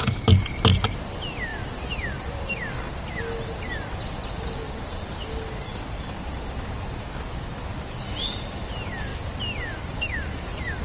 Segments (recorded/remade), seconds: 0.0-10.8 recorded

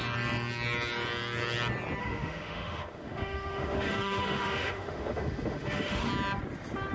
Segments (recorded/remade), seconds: 0.0-2.0 recorded; 2.0-6.1 remade; 6.1-6.9 recorded

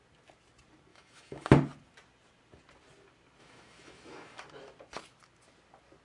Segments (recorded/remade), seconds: 0.0-0.9 recorded; 0.9-1.5 remade; 1.5-3.4 recorded; 3.4-4.4 remade; 4.4-6.0 recorded

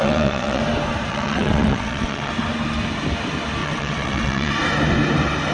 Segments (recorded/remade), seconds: 0.0-0.6 remade; 0.6-1.1 recorded; 1.1-2.3 remade; 2.3-3.6 recorded; 3.6-4.5 remade; 4.5-5.5 recorded

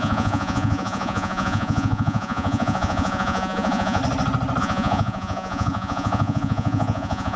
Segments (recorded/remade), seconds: 0.0-4.0 remade; 4.0-4.6 recorded; 4.6-7.4 remade

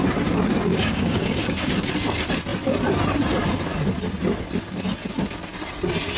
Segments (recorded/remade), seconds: 0.0-0.7 recorded; 0.7-1.7 remade; 1.7-6.2 recorded

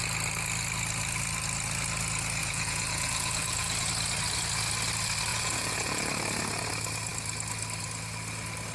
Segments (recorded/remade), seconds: 0.0-2.4 recorded; 2.4-3.9 remade; 3.9-5.3 recorded; 5.3-6.1 remade; 6.1-8.7 recorded

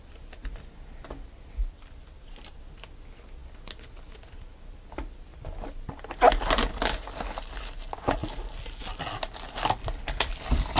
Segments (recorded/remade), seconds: 0.0-1.6 recorded; 1.6-2.6 remade; 2.6-9.8 recorded; 9.8-10.8 remade